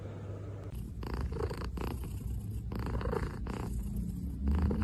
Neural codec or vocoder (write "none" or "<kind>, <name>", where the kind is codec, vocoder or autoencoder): none